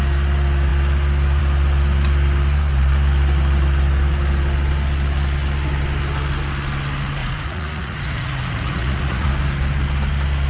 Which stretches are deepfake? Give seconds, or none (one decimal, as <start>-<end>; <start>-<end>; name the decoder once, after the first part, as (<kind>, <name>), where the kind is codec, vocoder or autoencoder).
7.2-9.3 (vocoder, Vocos)